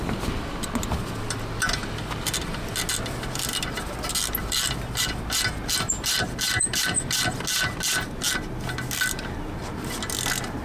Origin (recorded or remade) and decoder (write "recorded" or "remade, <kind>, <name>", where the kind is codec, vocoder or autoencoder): recorded